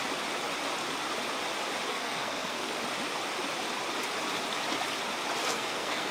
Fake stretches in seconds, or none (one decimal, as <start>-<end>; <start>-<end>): 1.9-2.7; 5.4-6.1